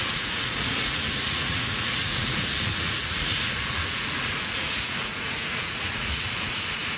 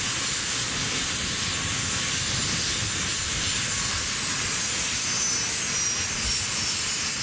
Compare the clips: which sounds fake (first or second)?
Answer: first